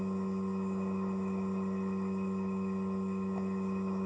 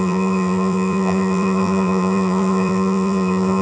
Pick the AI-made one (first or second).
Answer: second